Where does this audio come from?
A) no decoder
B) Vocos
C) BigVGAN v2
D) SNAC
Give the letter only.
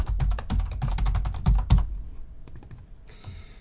A